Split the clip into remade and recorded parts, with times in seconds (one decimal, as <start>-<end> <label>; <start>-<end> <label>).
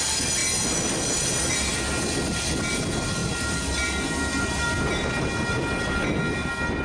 0.0-6.8 recorded